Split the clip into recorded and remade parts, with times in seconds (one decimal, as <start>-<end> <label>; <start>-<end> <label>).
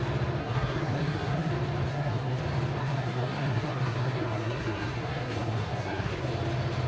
0.0-0.4 recorded; 0.4-1.5 remade; 1.5-1.9 recorded; 1.9-2.4 remade; 2.4-2.8 recorded; 2.8-6.3 remade; 6.3-6.9 recorded